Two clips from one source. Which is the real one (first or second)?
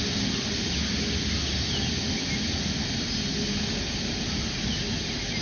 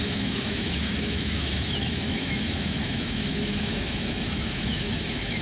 first